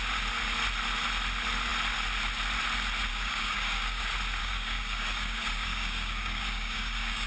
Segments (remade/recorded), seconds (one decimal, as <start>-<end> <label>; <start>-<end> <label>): 0.0-3.1 recorded; 3.1-4.0 remade; 4.0-4.4 recorded; 4.4-7.3 remade